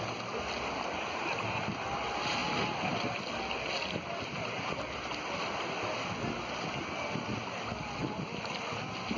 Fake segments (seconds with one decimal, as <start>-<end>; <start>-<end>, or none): none

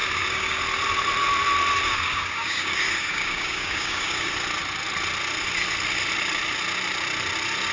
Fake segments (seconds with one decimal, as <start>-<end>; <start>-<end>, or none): 0.0-0.6; 1.9-4.3

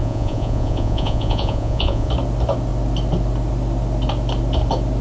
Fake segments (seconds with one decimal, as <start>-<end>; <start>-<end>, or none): 0.0-2.1